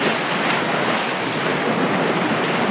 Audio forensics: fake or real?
real